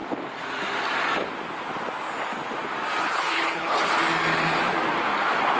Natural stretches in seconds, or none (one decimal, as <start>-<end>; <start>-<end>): 0.0-3.0; 4.0-5.6